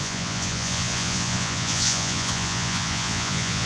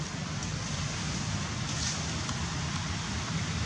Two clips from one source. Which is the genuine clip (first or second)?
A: second